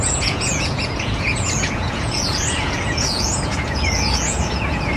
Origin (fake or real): fake